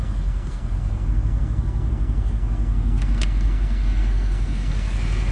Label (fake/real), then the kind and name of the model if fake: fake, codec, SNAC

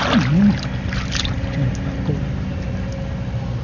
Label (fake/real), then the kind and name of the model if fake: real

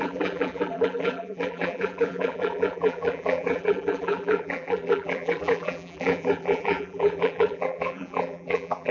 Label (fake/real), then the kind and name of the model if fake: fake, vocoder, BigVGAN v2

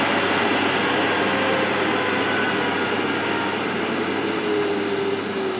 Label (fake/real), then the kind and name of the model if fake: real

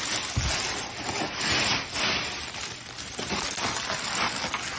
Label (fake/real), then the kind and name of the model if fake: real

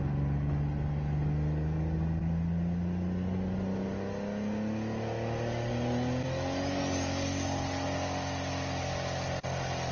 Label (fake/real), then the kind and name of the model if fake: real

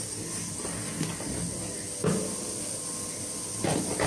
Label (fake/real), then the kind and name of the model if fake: real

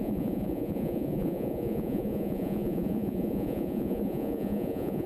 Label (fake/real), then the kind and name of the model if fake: fake, vocoder, Vocos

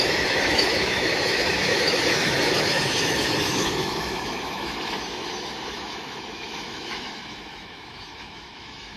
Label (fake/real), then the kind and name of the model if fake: fake, autoencoder, DAC-VAE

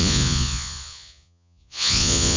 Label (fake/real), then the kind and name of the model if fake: fake, vocoder, Vocos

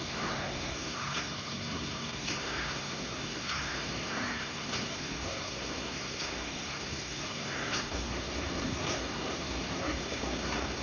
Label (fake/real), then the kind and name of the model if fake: fake, codec, SNAC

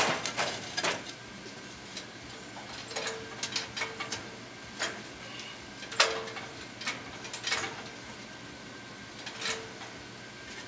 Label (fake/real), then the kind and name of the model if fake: real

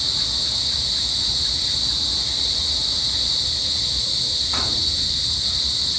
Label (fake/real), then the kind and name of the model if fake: real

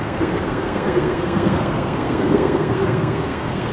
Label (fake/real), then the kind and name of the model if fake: fake, codec, SNAC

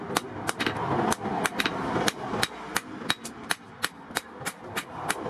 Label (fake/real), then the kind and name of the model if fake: real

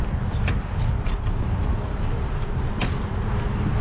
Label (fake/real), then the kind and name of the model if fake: real